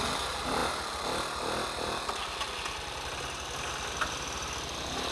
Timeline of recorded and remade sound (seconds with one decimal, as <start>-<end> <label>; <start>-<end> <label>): 0.0-5.1 recorded